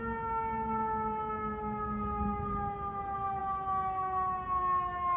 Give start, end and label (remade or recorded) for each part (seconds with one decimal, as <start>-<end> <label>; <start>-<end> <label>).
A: 0.0-5.2 recorded

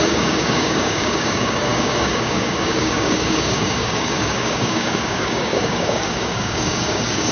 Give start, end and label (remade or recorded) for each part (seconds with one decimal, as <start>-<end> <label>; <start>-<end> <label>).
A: 0.0-7.3 remade

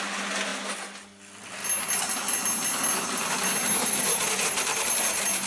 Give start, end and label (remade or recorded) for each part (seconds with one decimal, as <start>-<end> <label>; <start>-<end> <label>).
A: 0.0-3.8 recorded; 3.8-4.9 remade; 4.9-5.5 recorded

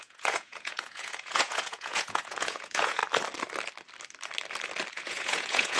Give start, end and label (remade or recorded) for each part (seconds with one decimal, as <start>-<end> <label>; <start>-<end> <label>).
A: 0.0-3.0 remade; 3.0-4.9 recorded; 4.9-5.8 remade

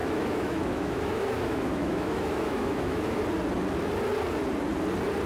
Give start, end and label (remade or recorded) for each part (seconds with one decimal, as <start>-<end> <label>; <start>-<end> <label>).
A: 0.0-3.2 remade; 3.2-5.3 recorded

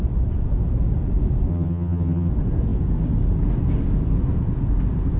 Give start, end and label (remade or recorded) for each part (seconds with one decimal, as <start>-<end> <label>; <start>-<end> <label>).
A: 0.0-1.5 recorded; 1.5-2.3 remade; 2.3-5.2 recorded

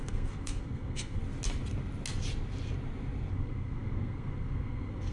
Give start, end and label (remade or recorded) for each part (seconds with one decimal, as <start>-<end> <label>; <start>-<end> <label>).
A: 0.0-1.2 remade; 1.2-3.3 recorded; 3.3-5.1 remade

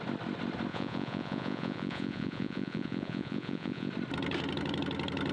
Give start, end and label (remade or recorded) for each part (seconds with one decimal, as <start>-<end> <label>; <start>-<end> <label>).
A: 0.0-0.7 recorded; 0.7-3.9 remade; 3.9-5.3 recorded